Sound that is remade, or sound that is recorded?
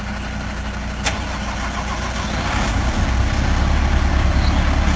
recorded